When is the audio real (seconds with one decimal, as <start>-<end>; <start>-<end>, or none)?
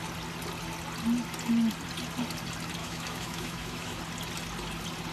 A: 0.0-2.8; 4.0-5.1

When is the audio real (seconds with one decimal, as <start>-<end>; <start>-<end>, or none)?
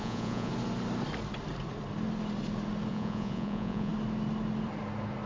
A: 0.5-2.9; 3.9-5.3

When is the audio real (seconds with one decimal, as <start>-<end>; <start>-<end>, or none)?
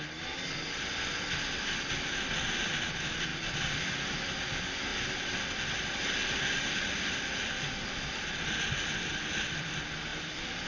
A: 0.0-3.3; 4.2-10.1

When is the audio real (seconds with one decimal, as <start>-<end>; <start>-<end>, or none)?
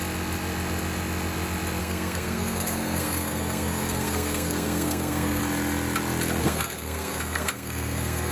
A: 0.0-1.8; 5.4-6.4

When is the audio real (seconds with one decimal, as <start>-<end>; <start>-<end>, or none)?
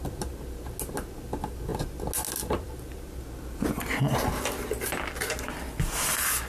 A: 0.0-6.5